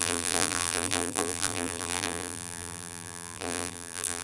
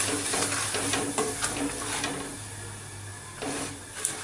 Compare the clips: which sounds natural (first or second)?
second